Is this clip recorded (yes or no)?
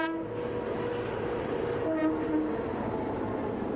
yes